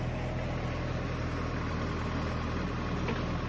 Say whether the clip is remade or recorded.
recorded